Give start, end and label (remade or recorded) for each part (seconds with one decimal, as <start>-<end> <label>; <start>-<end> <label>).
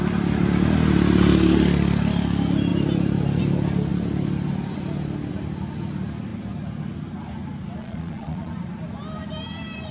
0.0-7.8 recorded; 7.8-8.5 remade; 8.5-9.9 recorded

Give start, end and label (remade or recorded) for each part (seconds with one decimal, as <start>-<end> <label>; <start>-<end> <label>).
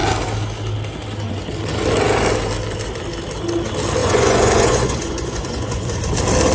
0.0-4.0 recorded; 4.0-6.0 remade; 6.0-6.5 recorded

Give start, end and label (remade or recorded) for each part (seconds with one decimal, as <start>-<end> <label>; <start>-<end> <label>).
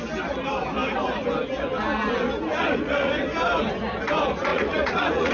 0.0-2.5 recorded; 2.5-3.1 remade; 3.1-4.5 recorded; 4.5-5.3 remade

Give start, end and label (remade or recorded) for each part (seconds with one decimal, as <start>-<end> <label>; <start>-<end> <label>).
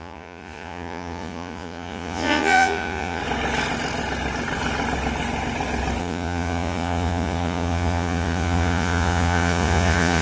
0.0-3.2 remade; 3.2-6.0 recorded; 6.0-10.2 remade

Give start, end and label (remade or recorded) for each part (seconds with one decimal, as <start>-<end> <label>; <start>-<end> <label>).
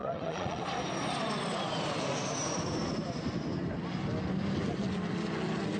0.0-0.6 remade; 0.6-5.8 recorded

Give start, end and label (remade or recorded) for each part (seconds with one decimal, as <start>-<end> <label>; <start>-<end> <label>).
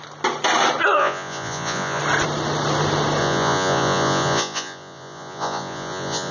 0.0-1.0 recorded; 1.0-2.0 remade; 2.0-3.2 recorded; 3.2-6.3 remade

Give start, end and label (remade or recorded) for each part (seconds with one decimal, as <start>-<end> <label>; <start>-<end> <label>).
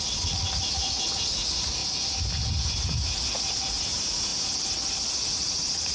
0.0-1.8 remade; 1.8-3.5 recorded; 3.5-4.3 remade; 4.3-5.3 recorded; 5.3-5.9 remade